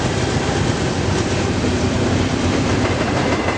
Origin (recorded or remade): remade